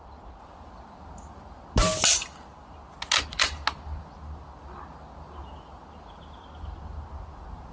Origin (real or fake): real